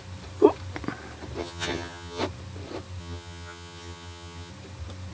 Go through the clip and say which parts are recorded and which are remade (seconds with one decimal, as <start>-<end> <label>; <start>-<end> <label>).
0.0-1.4 recorded; 1.4-2.2 remade; 2.2-3.0 recorded; 3.0-4.5 remade; 4.5-5.1 recorded